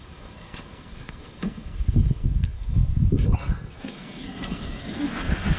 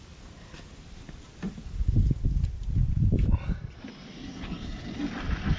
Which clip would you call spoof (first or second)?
first